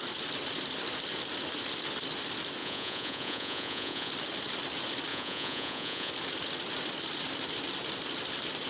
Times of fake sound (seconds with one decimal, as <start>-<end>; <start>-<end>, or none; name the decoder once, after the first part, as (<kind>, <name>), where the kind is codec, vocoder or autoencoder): 2.6-4.1 (vocoder, Vocos); 5.1-6.1